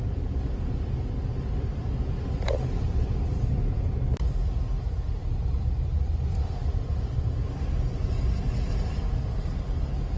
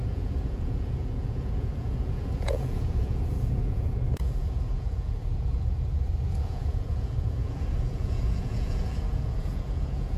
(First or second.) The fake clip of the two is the second